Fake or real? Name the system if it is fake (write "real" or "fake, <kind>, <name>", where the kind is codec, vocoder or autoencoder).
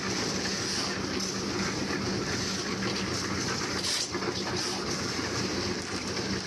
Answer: real